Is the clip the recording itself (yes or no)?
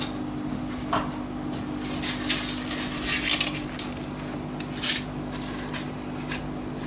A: yes